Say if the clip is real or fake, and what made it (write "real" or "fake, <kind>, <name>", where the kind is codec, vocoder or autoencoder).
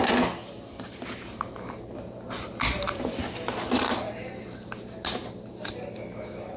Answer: real